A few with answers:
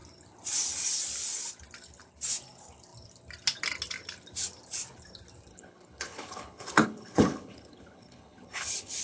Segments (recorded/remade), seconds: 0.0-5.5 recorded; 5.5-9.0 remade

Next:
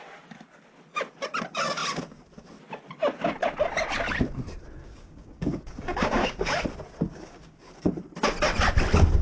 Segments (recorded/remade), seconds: 0.0-4.8 recorded; 4.8-6.6 remade; 6.6-7.1 recorded; 7.1-7.9 remade; 7.9-9.2 recorded